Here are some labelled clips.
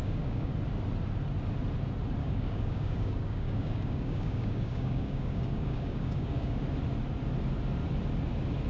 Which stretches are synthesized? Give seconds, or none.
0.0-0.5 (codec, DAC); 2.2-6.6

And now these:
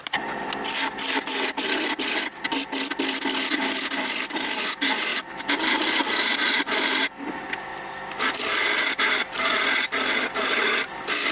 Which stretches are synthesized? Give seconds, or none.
none

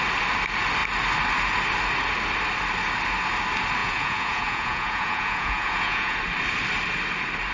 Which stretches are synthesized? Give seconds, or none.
3.8-6.2 (vocoder, Vocos)

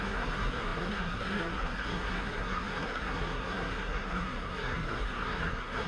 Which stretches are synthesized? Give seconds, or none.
0.0-5.9 (codec, SNAC)

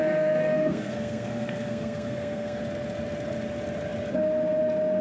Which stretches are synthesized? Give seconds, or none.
0.0-2.6 (codec, SNAC)

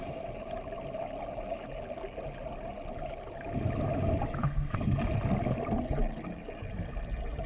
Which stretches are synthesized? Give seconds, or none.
4.4-5.0 (codec, SNAC)

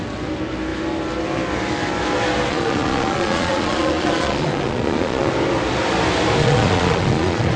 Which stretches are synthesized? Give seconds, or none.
2.5-5.3 (vocoder, Vocos); 6.4-7.6

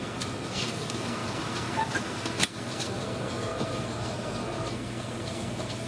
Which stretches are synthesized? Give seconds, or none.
0.0-5.9 (codec, SNAC)